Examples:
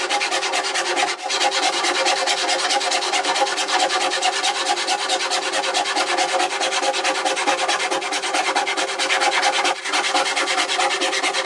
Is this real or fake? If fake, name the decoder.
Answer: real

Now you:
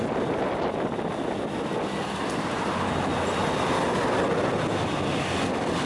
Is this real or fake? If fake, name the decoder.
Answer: real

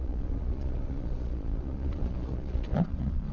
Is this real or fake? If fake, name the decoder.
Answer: fake, vocoder, Vocos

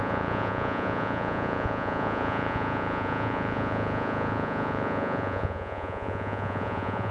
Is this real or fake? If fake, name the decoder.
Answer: fake, vocoder, Vocos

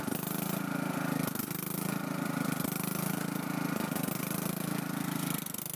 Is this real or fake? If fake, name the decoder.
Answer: real